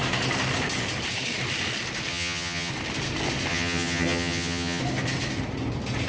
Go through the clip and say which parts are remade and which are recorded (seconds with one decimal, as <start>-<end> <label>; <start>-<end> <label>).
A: 0.0-2.1 recorded; 2.1-2.7 remade; 2.7-3.5 recorded; 3.5-4.8 remade; 4.8-6.1 recorded